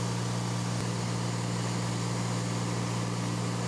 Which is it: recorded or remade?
recorded